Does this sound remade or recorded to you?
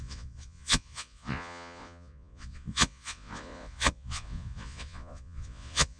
remade